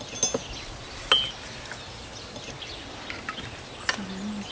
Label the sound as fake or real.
real